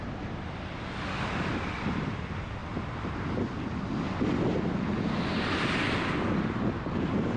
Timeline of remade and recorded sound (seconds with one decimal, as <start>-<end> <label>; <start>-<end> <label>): 0.0-2.6 remade; 2.6-5.0 recorded; 5.0-7.4 remade